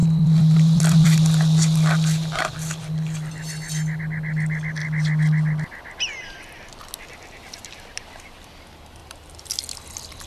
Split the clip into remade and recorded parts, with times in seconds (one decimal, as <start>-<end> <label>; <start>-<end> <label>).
0.0-4.0 remade; 4.0-9.0 recorded; 9.0-9.6 remade; 9.6-10.3 recorded